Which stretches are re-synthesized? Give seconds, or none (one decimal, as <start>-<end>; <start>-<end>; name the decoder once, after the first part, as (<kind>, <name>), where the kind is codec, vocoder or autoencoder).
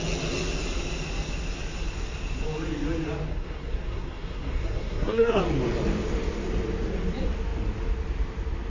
3.3-5.4 (codec, SNAC)